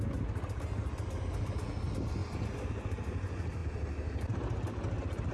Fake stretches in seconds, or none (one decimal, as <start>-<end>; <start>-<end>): none